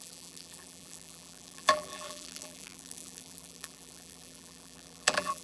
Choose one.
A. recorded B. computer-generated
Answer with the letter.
B